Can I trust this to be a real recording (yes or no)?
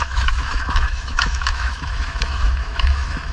no